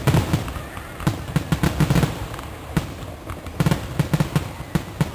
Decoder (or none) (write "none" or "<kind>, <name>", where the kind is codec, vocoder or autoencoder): none